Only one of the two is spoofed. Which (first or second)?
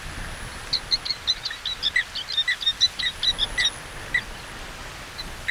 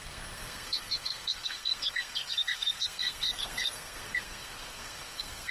second